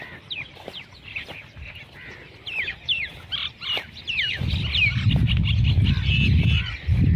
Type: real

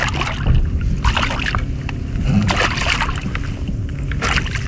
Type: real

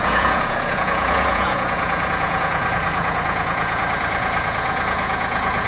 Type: fake